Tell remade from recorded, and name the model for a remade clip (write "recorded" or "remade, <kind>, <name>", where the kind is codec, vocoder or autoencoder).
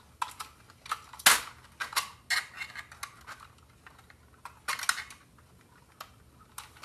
recorded